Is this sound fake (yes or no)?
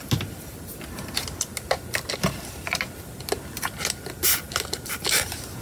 no